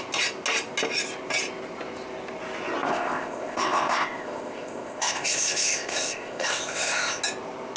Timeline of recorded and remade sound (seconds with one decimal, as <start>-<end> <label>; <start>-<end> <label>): 0.0-2.9 recorded; 2.9-7.2 remade; 7.2-7.8 recorded